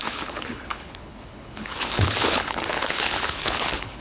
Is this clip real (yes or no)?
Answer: no